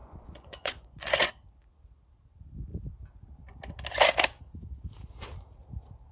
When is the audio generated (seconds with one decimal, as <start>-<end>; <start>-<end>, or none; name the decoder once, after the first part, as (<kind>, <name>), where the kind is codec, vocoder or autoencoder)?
0.0-1.3 (vocoder, Vocos)